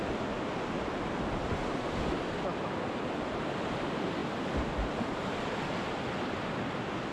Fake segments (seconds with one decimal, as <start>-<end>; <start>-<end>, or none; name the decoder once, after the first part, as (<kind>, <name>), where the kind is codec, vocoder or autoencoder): none

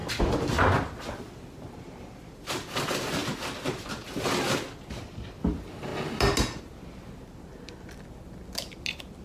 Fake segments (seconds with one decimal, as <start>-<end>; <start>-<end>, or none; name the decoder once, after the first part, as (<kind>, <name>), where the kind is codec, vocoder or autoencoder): none

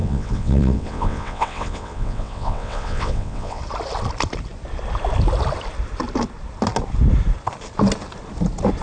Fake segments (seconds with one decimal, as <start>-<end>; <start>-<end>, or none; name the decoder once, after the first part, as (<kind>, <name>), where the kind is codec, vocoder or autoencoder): 0.0-3.6 (vocoder, WaveNeXt)

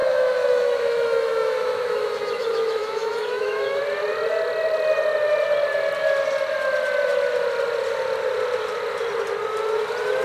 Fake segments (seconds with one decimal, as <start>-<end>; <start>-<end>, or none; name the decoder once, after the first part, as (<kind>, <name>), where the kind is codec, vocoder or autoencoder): 0.0-3.8 (autoencoder, DAC-VAE)

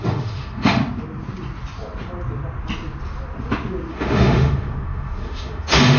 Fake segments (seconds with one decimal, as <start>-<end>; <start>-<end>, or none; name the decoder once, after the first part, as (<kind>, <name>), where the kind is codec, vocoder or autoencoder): 0.0-0.8 (autoencoder, DAC-VAE); 3.9-6.0

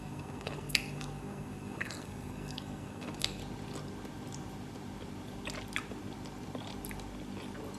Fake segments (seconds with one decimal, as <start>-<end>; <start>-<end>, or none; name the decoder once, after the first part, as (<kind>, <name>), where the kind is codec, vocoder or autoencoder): 0.0-3.4 (codec, SNAC)